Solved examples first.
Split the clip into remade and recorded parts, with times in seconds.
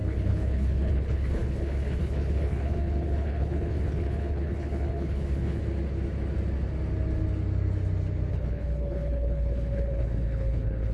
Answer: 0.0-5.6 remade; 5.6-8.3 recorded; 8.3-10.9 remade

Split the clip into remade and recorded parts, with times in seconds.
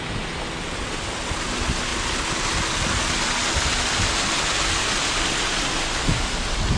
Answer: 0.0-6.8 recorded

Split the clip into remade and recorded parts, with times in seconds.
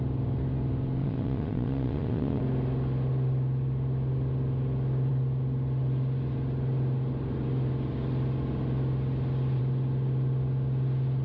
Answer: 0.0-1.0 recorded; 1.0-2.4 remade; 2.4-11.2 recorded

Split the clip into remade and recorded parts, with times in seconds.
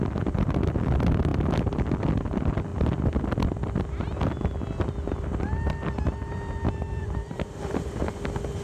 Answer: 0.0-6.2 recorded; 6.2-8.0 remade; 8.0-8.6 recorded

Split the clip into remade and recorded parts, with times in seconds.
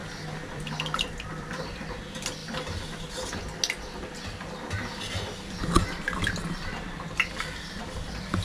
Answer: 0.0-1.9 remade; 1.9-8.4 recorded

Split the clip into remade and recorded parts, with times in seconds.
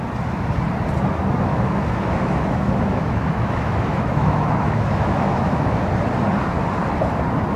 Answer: 0.0-1.5 recorded; 1.5-5.8 remade; 5.8-7.6 recorded